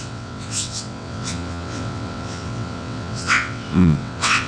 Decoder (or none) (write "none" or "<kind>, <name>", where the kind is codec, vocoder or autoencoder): vocoder, WaveNeXt